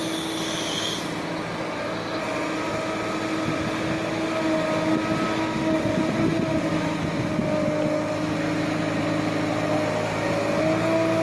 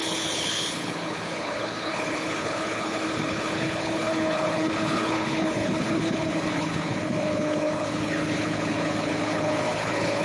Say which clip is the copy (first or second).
second